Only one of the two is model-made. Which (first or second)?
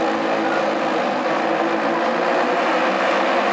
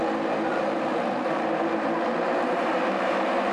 second